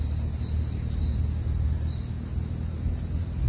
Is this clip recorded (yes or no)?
yes